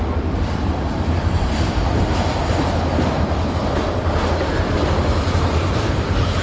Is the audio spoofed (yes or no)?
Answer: yes